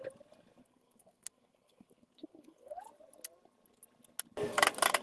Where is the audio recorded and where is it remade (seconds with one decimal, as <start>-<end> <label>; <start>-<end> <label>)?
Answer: 0.0-0.6 recorded; 0.6-2.8 remade; 2.8-5.0 recorded